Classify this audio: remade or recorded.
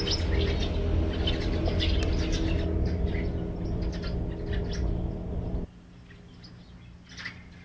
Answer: recorded